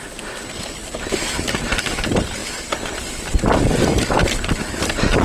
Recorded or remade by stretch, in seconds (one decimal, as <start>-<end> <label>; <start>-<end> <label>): 0.0-5.2 remade